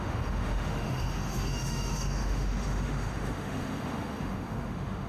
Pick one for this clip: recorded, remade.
remade